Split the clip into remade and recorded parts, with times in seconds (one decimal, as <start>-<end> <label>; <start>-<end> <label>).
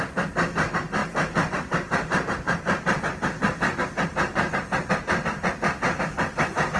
0.0-1.0 recorded; 1.0-4.9 remade; 4.9-6.8 recorded